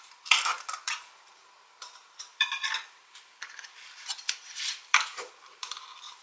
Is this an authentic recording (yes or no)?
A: no